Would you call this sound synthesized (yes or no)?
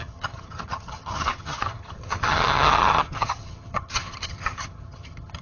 yes